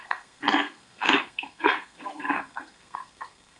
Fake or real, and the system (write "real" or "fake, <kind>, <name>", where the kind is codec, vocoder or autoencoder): fake, codec, SNAC